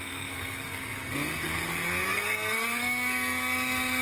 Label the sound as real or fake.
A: fake